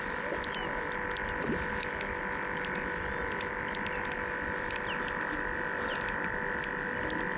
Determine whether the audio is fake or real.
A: real